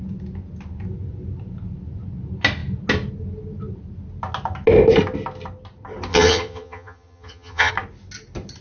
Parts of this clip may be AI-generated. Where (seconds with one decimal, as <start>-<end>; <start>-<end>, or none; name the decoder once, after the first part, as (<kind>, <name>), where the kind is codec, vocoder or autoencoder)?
6.1-7.7 (vocoder, HiFi-GAN)